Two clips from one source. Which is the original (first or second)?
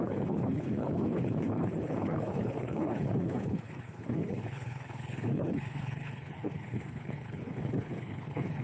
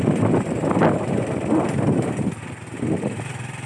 second